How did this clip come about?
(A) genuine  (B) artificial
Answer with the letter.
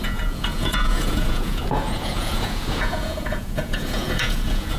B